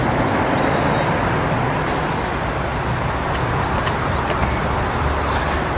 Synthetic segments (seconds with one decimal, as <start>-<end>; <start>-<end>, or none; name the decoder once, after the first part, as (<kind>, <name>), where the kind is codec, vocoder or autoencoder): none